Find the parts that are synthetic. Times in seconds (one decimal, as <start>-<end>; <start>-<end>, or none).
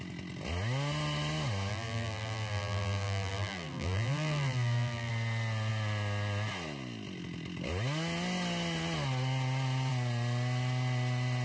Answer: 1.7-5.1